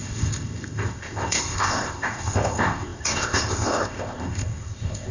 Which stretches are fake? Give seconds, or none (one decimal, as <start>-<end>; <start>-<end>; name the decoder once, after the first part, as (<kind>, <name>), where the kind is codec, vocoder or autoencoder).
0.0-5.1 (codec, ZipCodec)